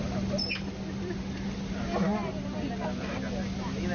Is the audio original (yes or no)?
yes